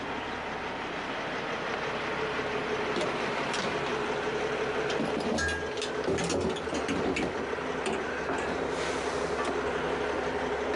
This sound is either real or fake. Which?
real